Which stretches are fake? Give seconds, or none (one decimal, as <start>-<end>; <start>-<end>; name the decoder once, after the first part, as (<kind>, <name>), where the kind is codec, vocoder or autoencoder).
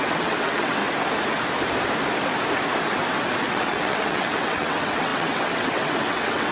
0.0-0.8 (vocoder, WaveNeXt); 3.5-6.5